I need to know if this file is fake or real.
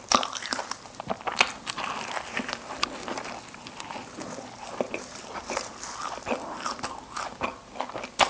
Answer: real